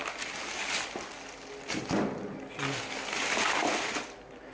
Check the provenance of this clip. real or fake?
real